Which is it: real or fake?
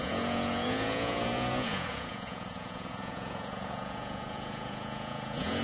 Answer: fake